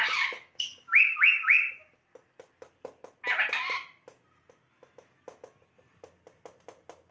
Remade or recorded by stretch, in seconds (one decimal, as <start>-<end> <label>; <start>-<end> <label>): 0.0-2.0 remade; 2.0-7.1 recorded

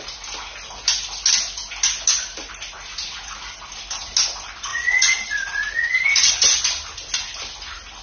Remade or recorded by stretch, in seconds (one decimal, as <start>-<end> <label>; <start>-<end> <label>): 0.0-4.7 recorded; 4.7-6.3 remade; 6.3-8.0 recorded

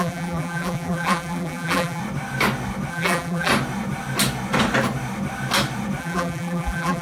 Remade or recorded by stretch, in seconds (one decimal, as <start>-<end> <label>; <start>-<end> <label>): 0.0-2.0 remade; 2.0-2.9 recorded; 2.9-3.5 remade; 3.5-6.0 recorded; 6.0-7.0 remade